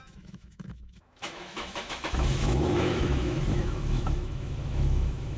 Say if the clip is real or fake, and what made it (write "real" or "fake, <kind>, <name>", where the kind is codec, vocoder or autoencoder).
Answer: fake, autoencoder, DAC-VAE